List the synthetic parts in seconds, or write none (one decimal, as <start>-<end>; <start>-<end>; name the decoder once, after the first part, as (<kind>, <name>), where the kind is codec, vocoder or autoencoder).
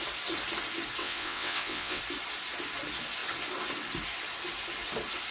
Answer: 1.0-2.0 (vocoder, WaveNeXt)